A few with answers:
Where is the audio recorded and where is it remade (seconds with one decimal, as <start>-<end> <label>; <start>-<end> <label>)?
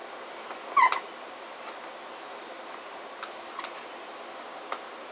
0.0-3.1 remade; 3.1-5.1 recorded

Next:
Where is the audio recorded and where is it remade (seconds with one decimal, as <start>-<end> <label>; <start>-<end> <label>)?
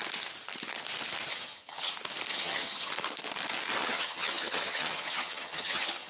0.0-1.3 recorded; 1.3-1.9 remade; 1.9-2.3 recorded; 2.3-2.9 remade; 2.9-3.8 recorded; 3.8-6.1 remade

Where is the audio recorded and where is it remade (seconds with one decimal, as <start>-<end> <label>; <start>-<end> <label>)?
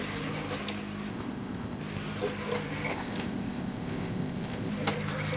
0.0-1.1 recorded; 1.1-1.8 remade; 1.8-2.9 recorded; 2.9-4.7 remade; 4.7-5.4 recorded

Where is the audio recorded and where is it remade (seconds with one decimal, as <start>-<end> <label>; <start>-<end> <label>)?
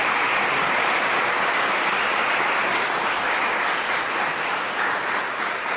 0.0-2.2 remade; 2.2-4.8 recorded; 4.8-5.8 remade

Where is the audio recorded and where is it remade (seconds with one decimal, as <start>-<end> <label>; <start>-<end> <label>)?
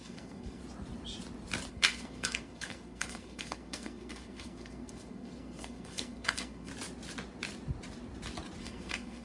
0.0-0.6 remade; 0.6-1.7 recorded; 1.7-6.7 remade; 6.7-8.6 recorded; 8.6-9.2 remade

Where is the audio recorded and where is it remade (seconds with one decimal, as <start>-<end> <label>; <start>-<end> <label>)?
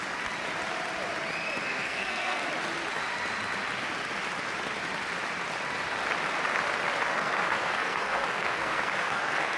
0.0-1.7 recorded; 1.7-2.4 remade; 2.4-7.1 recorded; 7.1-9.6 remade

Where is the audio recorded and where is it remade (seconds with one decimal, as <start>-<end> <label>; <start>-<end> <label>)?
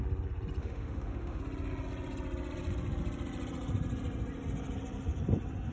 0.0-0.6 recorded; 0.6-1.4 remade; 1.4-5.7 recorded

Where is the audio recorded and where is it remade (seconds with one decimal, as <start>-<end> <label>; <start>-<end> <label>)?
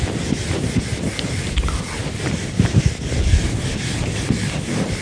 0.0-5.0 recorded